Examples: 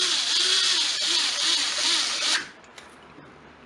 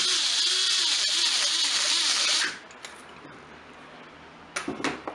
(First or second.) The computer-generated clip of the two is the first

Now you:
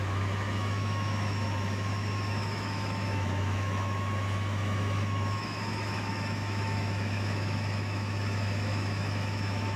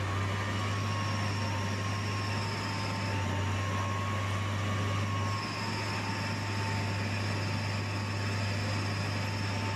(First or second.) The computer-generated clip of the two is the first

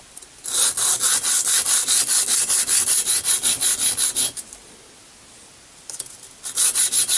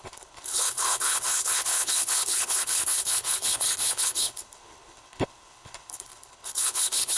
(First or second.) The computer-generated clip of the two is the second